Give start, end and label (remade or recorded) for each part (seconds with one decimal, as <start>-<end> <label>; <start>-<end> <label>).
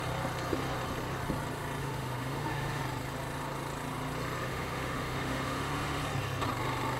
0.0-1.8 recorded; 1.8-2.8 remade; 2.8-4.5 recorded; 4.5-6.0 remade; 6.0-7.0 recorded